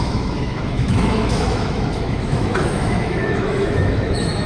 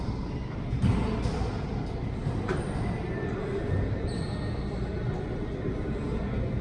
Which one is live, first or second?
second